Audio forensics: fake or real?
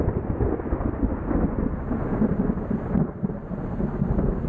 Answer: real